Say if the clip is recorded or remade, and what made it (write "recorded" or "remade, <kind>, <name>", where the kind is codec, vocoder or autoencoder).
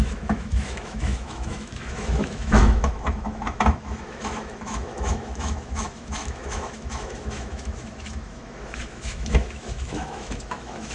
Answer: remade, autoencoder, DAC-VAE